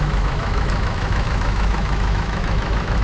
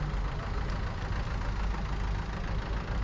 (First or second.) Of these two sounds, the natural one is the second